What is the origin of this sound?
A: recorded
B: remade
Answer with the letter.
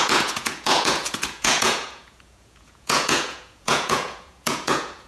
B